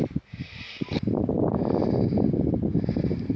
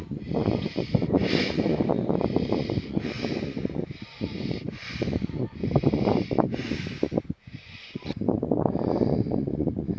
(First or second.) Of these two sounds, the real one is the first